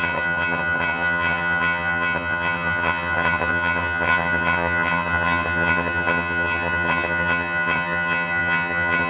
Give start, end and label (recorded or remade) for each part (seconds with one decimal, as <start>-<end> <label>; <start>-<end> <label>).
0.0-9.1 remade